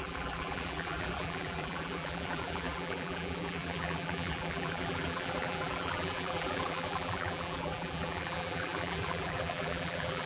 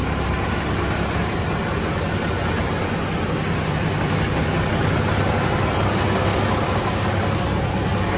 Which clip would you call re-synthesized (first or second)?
first